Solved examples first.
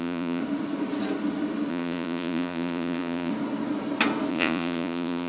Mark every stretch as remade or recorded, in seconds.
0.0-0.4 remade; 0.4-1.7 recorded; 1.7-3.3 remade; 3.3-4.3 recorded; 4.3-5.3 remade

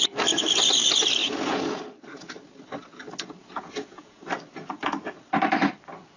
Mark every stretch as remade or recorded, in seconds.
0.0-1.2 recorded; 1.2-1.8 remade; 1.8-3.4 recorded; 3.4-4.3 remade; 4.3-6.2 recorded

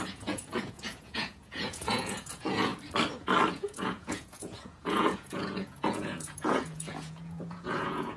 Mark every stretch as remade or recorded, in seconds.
0.0-2.7 remade; 2.7-3.5 recorded; 3.5-8.2 remade

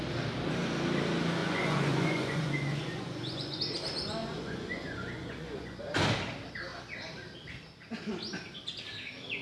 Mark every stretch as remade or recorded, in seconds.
0.0-1.4 recorded; 1.4-3.6 remade; 3.6-4.2 recorded; 4.2-5.8 remade; 5.8-9.4 recorded

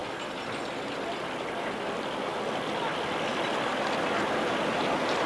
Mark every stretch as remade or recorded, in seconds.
0.0-5.3 recorded

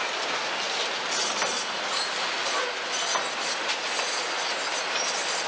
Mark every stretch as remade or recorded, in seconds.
0.0-5.5 recorded